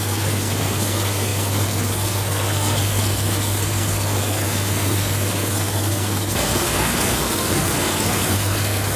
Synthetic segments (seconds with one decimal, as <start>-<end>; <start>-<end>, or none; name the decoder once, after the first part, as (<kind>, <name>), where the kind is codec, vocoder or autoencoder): 0.0-9.0 (codec, SNAC)